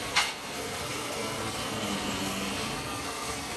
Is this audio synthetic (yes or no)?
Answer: yes